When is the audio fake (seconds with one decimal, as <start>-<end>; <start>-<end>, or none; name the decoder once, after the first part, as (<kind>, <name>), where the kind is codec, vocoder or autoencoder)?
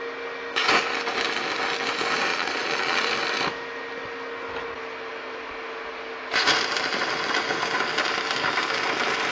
2.3-3.1 (vocoder, Vocos)